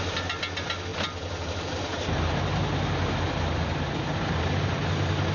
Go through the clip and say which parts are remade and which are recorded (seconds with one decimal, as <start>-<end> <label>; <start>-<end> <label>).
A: 0.0-5.3 recorded

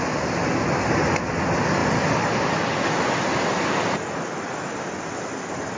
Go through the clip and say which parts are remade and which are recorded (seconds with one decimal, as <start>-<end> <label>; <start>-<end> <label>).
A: 0.0-5.8 recorded

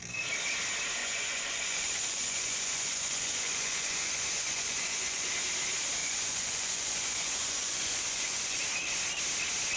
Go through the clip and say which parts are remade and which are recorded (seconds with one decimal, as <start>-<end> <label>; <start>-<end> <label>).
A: 0.0-1.0 recorded; 1.0-5.3 remade; 5.3-6.0 recorded; 6.0-8.6 remade; 8.6-9.8 recorded